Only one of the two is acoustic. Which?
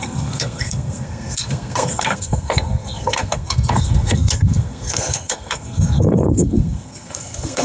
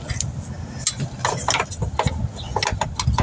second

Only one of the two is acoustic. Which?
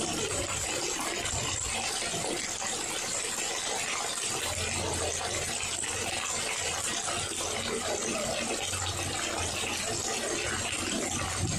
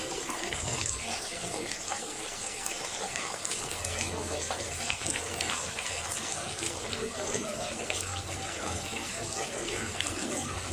first